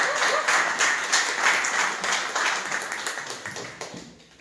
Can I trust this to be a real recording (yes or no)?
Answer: yes